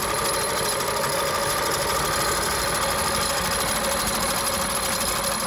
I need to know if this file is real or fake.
real